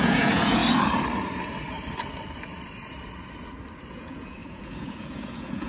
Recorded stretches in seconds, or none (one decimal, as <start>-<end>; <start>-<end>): 0.6-3.9